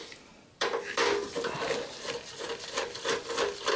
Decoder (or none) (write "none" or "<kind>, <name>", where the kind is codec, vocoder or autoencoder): none